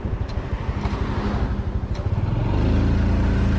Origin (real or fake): real